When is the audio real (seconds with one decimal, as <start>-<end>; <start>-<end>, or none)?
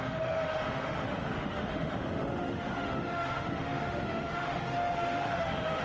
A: none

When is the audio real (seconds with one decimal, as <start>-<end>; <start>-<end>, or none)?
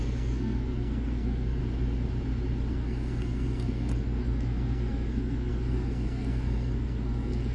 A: 1.6-2.7